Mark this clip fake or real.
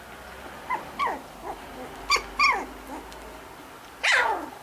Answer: real